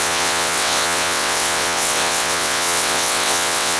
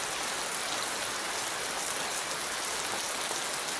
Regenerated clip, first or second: first